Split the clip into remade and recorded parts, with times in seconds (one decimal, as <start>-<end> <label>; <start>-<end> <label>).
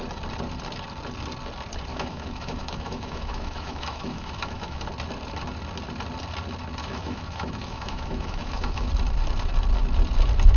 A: 0.0-1.9 recorded; 1.9-4.8 remade; 4.8-6.8 recorded; 6.8-8.9 remade; 8.9-10.6 recorded